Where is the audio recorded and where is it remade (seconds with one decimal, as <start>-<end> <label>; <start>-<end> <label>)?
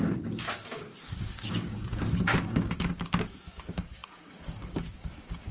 0.0-5.5 remade